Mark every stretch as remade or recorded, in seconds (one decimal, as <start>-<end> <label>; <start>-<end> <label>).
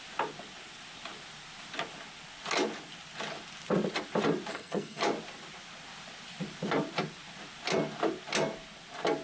0.0-4.5 recorded; 4.5-5.0 remade; 5.0-9.2 recorded